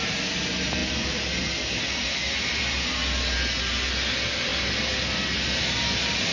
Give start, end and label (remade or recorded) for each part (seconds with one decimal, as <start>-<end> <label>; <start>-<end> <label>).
0.0-6.3 recorded

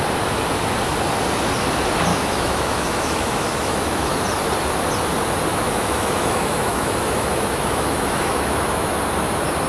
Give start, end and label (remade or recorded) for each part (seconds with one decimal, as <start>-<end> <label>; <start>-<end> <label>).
0.0-2.1 recorded; 2.1-4.1 remade; 4.1-5.5 recorded; 5.5-9.0 remade; 9.0-9.7 recorded